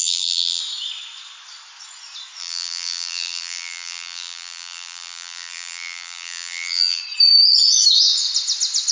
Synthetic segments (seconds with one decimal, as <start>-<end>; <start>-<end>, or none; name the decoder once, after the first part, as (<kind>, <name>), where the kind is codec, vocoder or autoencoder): 0.0-0.6 (vocoder, BigVGAN v2); 2.4-7.0